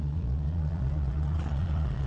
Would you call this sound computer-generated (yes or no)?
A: yes